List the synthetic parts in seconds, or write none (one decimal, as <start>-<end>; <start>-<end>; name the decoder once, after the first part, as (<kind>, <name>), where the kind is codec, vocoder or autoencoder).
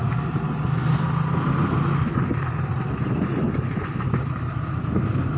none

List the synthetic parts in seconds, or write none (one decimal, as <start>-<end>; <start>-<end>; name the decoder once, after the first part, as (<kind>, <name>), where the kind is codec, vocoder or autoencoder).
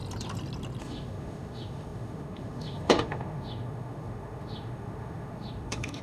0.8-6.0 (autoencoder, DAC-VAE)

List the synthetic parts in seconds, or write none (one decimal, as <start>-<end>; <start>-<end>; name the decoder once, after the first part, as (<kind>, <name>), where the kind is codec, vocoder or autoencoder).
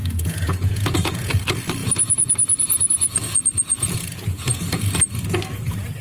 0.0-1.3 (vocoder, Vocos); 1.8-5.0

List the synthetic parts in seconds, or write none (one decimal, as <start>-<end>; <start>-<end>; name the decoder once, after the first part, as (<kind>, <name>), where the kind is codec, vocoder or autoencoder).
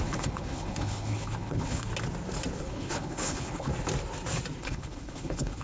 0.0-1.9 (codec, HILCodec); 2.6-3.7; 4.6-5.6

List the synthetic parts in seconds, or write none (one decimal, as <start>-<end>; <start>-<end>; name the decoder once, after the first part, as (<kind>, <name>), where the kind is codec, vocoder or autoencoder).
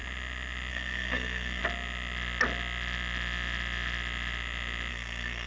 0.7-1.6 (codec, SNAC); 4.9-5.5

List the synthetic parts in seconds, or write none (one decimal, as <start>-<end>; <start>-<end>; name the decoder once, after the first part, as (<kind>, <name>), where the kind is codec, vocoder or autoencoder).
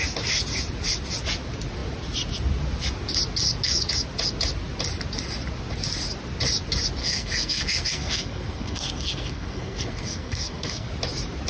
7.0-10.9 (codec, SNAC)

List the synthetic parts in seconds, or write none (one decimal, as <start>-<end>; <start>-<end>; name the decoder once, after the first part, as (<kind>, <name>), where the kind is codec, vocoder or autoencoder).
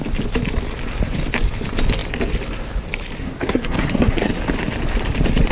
3.2-4.3 (codec, SNAC)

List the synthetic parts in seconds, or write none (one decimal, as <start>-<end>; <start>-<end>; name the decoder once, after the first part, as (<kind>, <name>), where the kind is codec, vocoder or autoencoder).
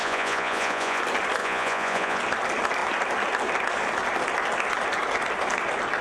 0.0-1.0 (vocoder, Vocos); 1.4-2.2